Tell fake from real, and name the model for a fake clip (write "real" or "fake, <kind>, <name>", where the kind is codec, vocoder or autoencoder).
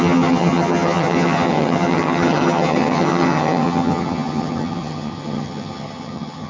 fake, vocoder, HiFi-GAN